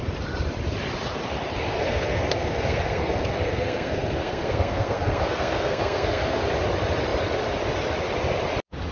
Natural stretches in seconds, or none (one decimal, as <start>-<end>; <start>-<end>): 0.0-1.7; 6.4-8.9